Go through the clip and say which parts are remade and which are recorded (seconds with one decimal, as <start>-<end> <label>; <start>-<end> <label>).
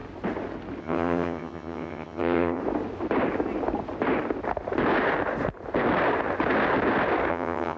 0.0-0.8 recorded; 0.8-2.6 remade; 2.6-7.3 recorded; 7.3-7.8 remade